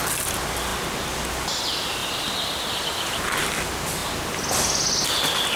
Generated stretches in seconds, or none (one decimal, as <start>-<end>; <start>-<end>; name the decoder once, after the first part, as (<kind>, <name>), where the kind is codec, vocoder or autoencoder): 2.0-2.8 (vocoder, BigVGAN v2)